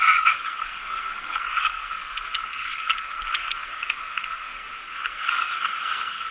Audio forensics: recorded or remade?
remade